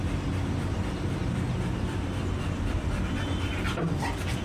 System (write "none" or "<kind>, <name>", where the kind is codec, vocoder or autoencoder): none